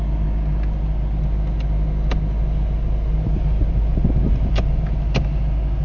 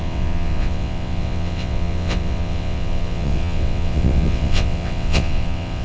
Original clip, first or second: first